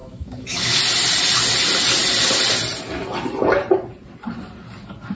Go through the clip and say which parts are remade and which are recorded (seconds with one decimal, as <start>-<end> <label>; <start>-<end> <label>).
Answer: 0.0-0.8 remade; 0.8-5.1 recorded